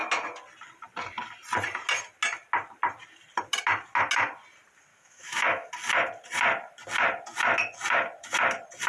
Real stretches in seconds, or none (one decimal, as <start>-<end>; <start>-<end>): 0.0-4.9; 5.7-8.9